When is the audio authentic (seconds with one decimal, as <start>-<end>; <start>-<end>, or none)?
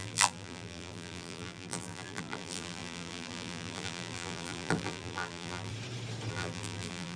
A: 5.7-6.3